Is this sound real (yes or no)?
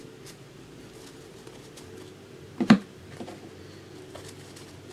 no